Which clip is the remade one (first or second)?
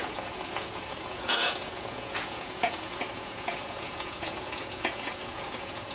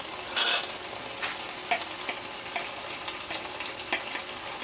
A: first